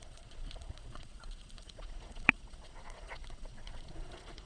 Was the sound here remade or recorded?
remade